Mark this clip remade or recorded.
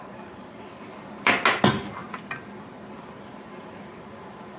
recorded